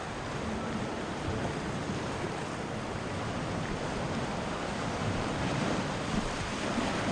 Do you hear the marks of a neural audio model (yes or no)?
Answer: yes